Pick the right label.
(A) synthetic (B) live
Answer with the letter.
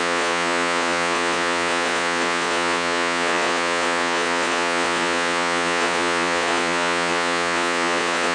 A